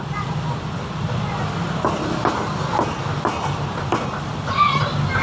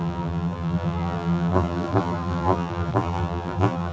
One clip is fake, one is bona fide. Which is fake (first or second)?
second